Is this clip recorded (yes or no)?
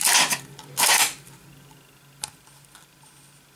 yes